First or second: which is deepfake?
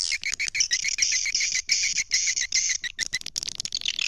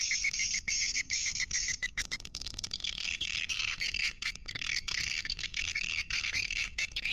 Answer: second